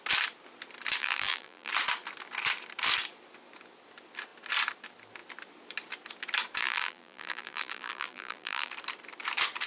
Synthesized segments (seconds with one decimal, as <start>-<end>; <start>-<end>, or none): 1.0-1.7; 6.6-8.7